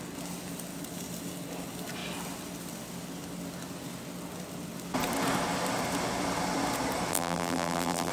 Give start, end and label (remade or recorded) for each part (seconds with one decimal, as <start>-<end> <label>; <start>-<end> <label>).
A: 0.0-7.1 recorded; 7.1-8.1 remade